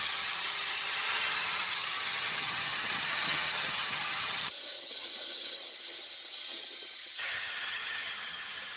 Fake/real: fake